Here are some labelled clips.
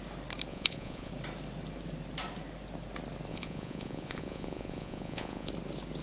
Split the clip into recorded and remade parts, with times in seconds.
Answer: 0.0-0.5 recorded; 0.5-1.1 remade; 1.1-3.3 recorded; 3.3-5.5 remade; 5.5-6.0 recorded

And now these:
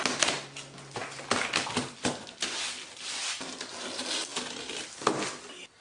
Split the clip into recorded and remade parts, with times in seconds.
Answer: 0.0-5.8 recorded

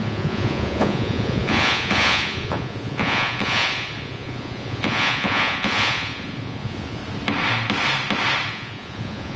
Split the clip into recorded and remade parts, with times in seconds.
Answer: 0.0-7.0 remade; 7.0-8.5 recorded; 8.5-9.4 remade

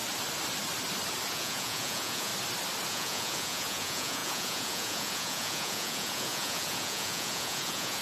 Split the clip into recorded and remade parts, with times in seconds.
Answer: 0.0-1.3 recorded; 1.3-2.3 remade; 2.3-2.9 recorded; 2.9-8.0 remade

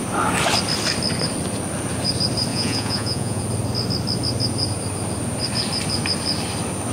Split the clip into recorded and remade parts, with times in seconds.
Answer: 0.0-2.5 recorded; 2.5-3.4 remade; 3.4-6.9 recorded